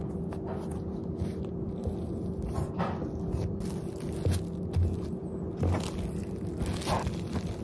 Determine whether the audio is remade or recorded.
recorded